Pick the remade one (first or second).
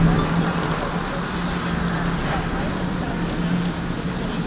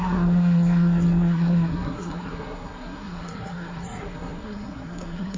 second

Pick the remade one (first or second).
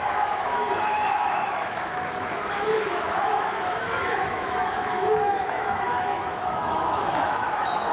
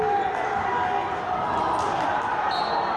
first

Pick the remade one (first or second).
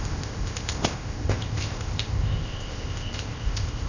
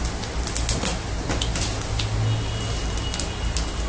first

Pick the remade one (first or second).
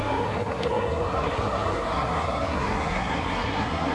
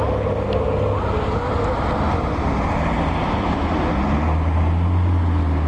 first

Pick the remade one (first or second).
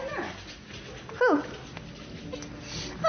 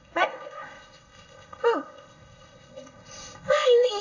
second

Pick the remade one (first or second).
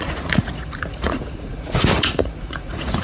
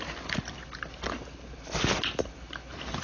first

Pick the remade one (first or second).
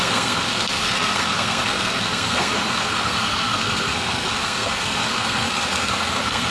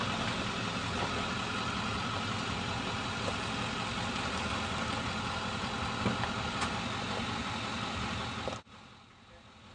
first